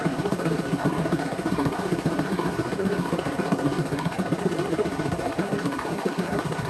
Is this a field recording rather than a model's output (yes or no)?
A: no